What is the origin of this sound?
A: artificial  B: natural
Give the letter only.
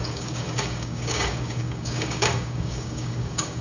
A